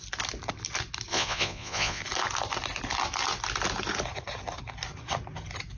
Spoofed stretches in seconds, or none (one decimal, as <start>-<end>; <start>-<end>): 1.1-2.0